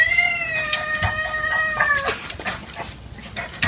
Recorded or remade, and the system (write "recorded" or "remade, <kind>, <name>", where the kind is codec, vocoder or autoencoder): recorded